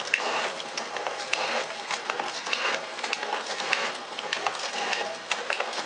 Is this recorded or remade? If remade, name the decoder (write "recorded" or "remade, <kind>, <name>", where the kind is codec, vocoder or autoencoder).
remade, codec, SNAC